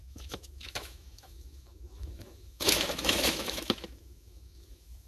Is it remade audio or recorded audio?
remade